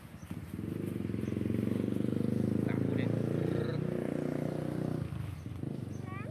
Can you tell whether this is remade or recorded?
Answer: recorded